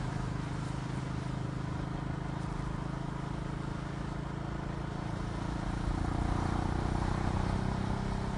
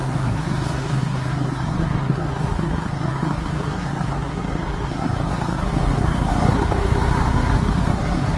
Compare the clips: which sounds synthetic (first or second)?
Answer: second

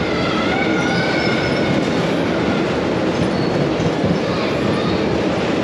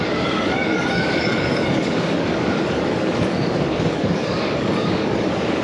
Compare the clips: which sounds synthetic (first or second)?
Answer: second